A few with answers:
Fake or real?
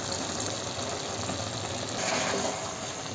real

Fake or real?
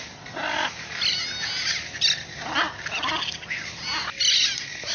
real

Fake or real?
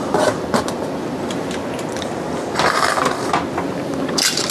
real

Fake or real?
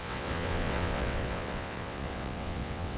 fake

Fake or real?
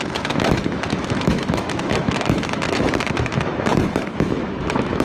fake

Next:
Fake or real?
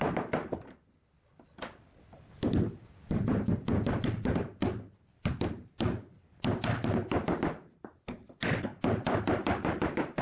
real